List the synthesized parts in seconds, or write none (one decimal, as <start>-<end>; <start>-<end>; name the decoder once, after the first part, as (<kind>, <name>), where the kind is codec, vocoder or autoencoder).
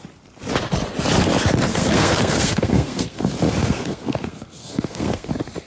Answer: 1.7-3.2 (codec, SNAC); 3.6-5.3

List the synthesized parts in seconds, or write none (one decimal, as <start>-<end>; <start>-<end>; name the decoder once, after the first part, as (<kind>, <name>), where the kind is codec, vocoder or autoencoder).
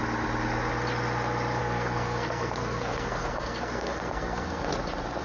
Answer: 1.6-4.7 (codec, SNAC)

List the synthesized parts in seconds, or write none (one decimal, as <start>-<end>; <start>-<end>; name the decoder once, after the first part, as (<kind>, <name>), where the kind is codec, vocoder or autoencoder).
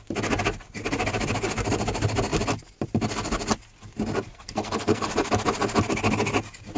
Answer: 4.3-5.1 (codec, SNAC)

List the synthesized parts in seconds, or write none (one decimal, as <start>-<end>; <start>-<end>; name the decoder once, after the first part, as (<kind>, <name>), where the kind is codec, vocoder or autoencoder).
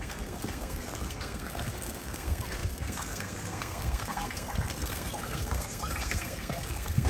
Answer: 0.0-7.1 (codec, SNAC)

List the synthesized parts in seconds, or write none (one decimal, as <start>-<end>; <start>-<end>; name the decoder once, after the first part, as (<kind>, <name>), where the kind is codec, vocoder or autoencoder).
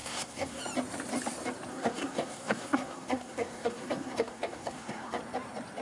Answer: 0.0-0.6 (codec, SNAC); 1.7-5.2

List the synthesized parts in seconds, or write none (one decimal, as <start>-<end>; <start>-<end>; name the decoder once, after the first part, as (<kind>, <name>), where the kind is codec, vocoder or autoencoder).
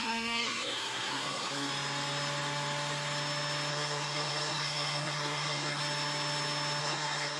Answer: 0.0-1.7 (codec, SNAC); 3.7-5.8; 6.8-7.4